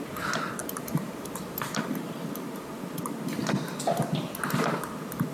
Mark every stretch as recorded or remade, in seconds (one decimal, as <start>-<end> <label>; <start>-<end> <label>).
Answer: 0.0-0.6 recorded; 0.6-2.7 remade; 2.7-5.3 recorded